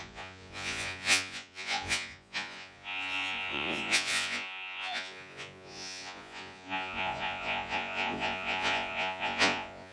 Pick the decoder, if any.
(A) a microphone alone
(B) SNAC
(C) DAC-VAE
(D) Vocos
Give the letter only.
D